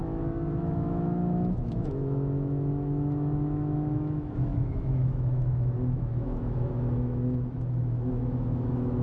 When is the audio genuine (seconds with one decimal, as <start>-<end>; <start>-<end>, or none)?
0.0-0.6